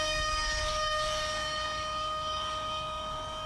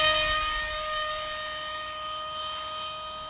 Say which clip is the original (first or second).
second